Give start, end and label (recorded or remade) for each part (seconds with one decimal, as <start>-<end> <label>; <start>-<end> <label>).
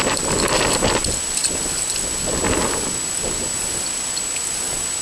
0.0-5.0 recorded